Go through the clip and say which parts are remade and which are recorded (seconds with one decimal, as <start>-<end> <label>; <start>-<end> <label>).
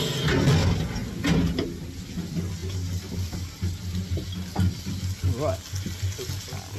0.0-6.8 recorded